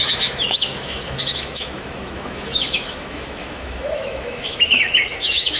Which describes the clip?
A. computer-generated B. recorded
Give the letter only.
A